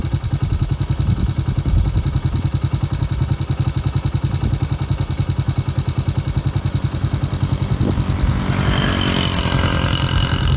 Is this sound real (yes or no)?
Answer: yes